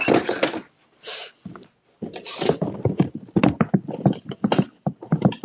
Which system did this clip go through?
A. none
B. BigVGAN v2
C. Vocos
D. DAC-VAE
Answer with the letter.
A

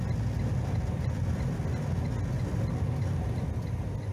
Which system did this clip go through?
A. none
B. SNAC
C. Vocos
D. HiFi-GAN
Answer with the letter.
A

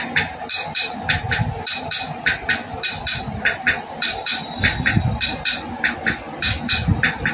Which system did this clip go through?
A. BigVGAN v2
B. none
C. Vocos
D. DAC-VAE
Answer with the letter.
B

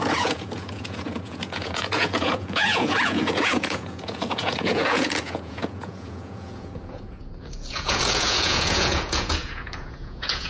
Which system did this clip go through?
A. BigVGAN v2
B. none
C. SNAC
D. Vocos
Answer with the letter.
D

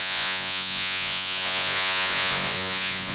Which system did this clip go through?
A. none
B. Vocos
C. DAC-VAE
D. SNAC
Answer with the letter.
B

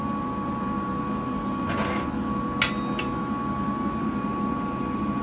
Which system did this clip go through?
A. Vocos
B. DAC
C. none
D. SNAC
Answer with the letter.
C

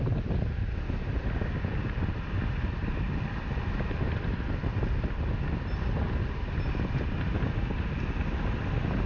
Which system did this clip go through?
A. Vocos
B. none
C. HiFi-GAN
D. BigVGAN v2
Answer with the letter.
B